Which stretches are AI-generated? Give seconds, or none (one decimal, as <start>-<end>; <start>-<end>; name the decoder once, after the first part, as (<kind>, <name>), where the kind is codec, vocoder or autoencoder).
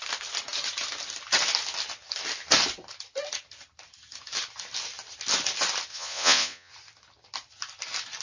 5.9-6.7 (vocoder, Vocos)